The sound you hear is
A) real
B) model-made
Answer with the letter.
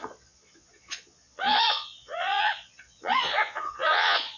B